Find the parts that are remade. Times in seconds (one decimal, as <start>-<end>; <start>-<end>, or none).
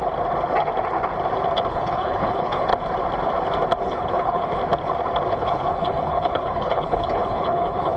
1.7-2.7; 3.8-4.6; 5.3-8.0